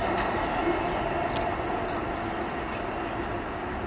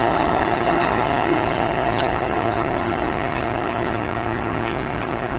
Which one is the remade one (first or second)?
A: second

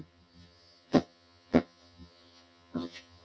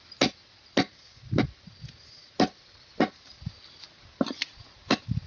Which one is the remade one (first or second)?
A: first